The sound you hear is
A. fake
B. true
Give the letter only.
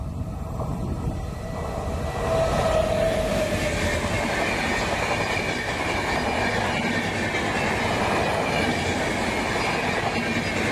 B